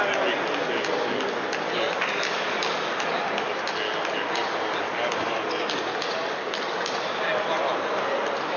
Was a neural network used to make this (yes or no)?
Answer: no